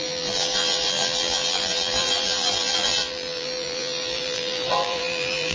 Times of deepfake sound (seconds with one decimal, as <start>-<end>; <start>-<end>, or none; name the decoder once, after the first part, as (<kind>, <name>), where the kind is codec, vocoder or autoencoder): 0.0-5.5 (vocoder, BigVGAN v2)